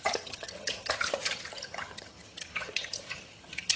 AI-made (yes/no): yes